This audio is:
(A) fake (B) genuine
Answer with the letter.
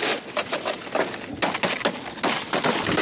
B